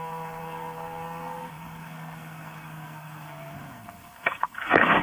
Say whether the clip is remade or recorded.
remade